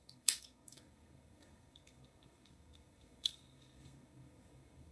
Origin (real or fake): fake